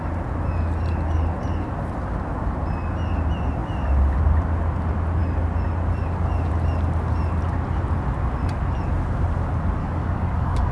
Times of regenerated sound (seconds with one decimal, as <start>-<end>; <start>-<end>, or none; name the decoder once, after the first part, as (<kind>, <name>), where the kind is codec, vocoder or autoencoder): 9.8-10.7 (codec, DAC)